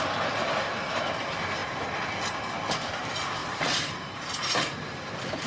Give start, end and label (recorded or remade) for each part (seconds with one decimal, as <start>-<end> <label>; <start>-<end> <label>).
0.0-3.4 recorded; 3.4-5.5 remade